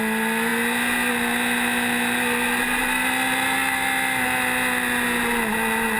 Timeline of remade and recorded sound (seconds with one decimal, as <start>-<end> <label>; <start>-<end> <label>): 0.0-6.0 recorded